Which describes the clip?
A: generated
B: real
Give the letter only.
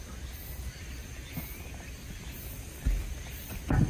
B